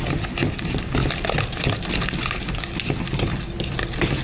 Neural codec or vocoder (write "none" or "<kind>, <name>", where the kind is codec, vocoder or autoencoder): none